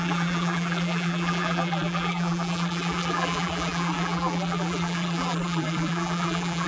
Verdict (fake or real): fake